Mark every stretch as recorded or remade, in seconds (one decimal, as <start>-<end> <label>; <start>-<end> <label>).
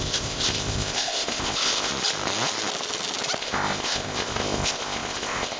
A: 0.0-1.9 remade; 1.9-3.4 recorded; 3.4-5.6 remade